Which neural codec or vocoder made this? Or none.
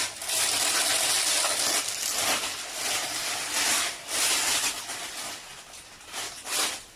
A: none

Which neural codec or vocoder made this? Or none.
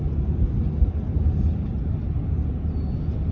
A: none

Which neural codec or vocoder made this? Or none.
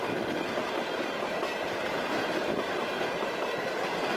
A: none